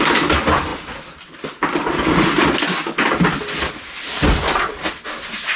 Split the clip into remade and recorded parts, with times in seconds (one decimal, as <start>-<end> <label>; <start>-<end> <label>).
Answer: 0.0-5.6 recorded